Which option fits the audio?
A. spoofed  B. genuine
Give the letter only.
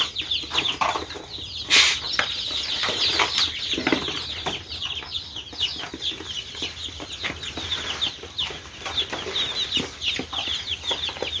B